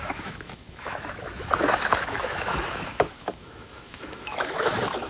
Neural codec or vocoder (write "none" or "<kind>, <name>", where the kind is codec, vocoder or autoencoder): autoencoder, DAC-VAE